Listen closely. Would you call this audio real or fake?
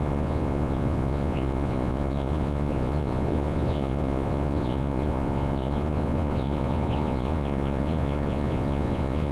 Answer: fake